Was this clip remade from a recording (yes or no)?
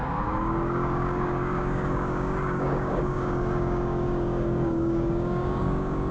yes